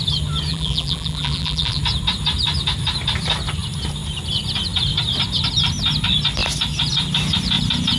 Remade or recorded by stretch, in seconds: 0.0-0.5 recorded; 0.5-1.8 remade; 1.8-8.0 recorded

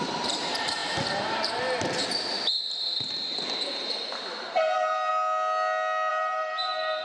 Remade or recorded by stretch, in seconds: 0.0-5.1 remade; 5.1-6.1 recorded; 6.1-7.0 remade

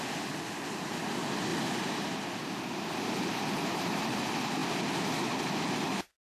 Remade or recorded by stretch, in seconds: 0.0-1.5 recorded; 1.5-3.1 remade; 3.1-6.4 recorded

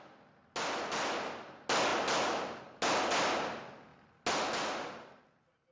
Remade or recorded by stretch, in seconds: 0.0-5.7 recorded